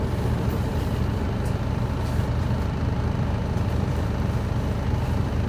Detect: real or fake fake